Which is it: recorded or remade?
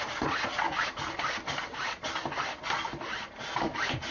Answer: recorded